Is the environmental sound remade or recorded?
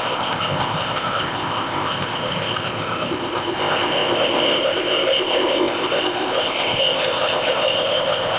remade